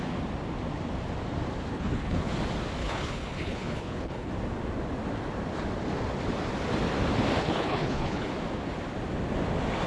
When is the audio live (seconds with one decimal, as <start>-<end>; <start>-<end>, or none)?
0.0-1.7; 2.3-2.8; 4.3-7.4; 8.3-9.9